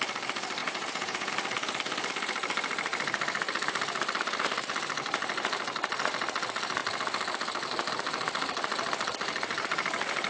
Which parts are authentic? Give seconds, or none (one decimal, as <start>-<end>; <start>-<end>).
0.0-0.6; 1.3-10.3